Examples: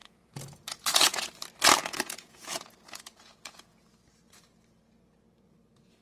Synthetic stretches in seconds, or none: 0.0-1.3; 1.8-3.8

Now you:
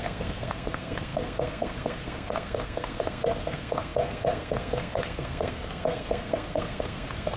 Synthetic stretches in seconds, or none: 0.0-7.4

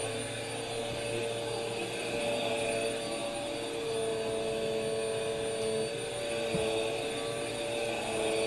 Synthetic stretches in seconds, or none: none

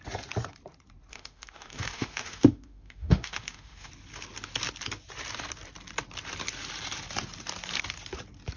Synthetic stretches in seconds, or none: 1.1-3.9